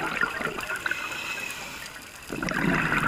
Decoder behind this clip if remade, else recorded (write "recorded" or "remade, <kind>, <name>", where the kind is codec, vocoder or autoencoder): recorded